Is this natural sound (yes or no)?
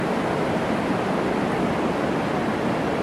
yes